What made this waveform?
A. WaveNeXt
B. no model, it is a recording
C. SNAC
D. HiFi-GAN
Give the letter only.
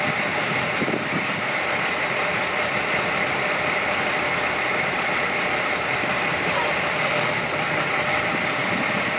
B